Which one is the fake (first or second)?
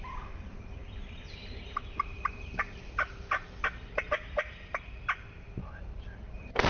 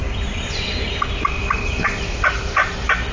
first